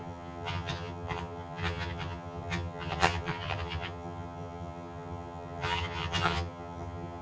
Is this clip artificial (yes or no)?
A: yes